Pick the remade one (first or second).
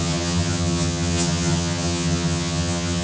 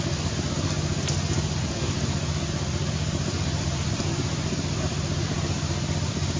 first